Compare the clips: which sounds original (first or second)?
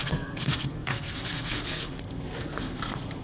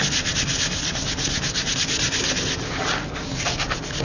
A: second